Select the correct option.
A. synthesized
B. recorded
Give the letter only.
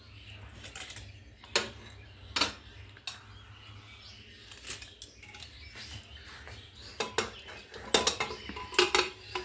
B